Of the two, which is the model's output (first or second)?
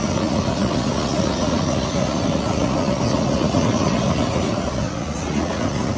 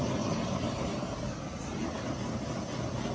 first